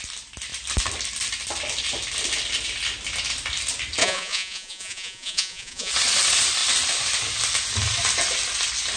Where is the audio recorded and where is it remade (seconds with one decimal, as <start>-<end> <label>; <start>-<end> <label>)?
0.0-4.0 recorded; 4.0-5.9 remade; 5.9-9.0 recorded